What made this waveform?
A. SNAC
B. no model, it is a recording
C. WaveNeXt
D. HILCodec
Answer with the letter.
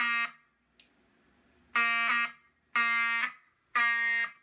B